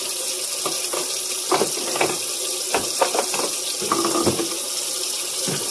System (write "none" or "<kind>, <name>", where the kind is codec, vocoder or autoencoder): none